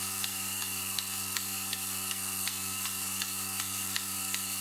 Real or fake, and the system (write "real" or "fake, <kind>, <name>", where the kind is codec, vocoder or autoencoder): fake, codec, SNAC